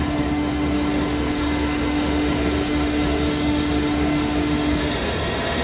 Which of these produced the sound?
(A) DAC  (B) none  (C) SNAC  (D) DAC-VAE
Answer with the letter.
D